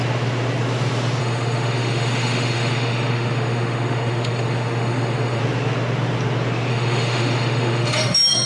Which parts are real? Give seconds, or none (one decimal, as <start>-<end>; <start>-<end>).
0.0-1.2; 5.4-6.7